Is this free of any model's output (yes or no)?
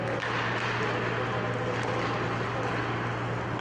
yes